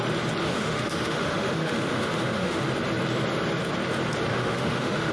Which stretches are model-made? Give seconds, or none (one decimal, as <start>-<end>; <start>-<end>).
0.4-2.7; 4.3-5.1